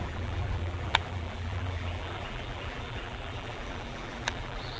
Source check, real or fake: fake